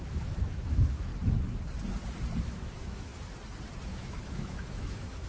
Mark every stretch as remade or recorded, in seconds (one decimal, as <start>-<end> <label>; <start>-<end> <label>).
0.0-1.1 remade; 1.1-2.4 recorded; 2.4-3.1 remade; 3.1-3.9 recorded; 3.9-5.3 remade